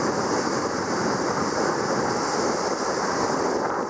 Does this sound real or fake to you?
real